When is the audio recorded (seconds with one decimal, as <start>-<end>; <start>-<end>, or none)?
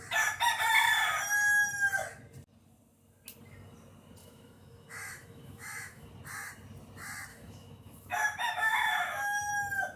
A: 0.0-4.2; 6.1-7.3; 9.5-10.0